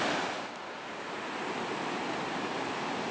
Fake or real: real